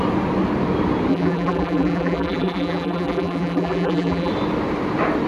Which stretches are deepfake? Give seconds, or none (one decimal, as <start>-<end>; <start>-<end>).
1.1-4.3